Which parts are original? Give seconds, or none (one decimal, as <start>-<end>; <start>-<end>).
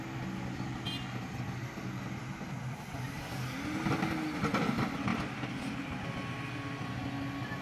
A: 0.0-7.6